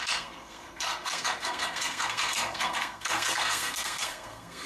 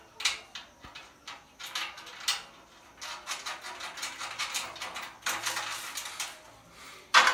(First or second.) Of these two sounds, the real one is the second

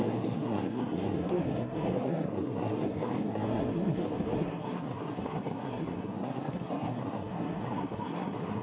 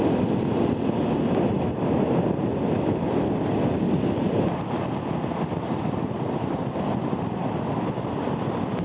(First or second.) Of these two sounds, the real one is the second